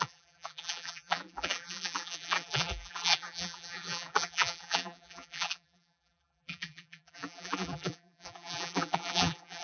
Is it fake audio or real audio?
fake